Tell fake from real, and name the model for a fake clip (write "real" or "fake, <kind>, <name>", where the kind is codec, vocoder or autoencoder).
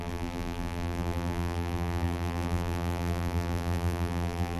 fake, vocoder, BigVGAN v2